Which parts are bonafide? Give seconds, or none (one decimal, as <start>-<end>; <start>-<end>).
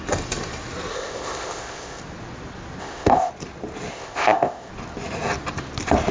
0.0-0.9; 2.0-2.8; 3.3-3.9; 4.7-6.1